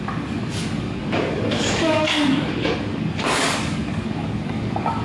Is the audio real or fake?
fake